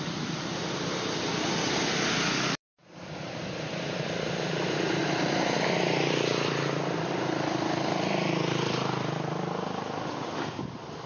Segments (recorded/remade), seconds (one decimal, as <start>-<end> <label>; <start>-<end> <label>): 0.0-11.1 remade